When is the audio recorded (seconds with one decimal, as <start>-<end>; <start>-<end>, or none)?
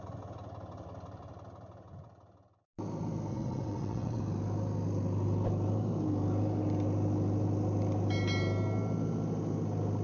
0.0-3.3; 4.2-10.0